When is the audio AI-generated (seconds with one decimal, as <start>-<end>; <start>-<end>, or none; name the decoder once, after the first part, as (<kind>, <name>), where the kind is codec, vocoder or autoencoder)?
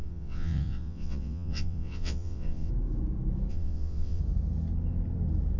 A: 0.0-2.7 (vocoder, WaveNeXt); 3.5-4.2